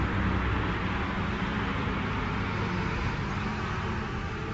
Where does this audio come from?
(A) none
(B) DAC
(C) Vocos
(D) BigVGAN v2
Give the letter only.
A